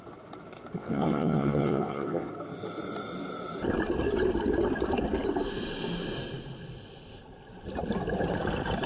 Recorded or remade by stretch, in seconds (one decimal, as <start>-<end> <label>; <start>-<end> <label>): 0.0-0.8 recorded; 0.8-2.3 remade; 2.3-8.9 recorded